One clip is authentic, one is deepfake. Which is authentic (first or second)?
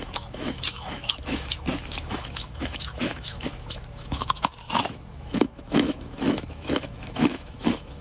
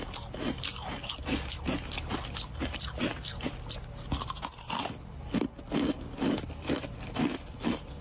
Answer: second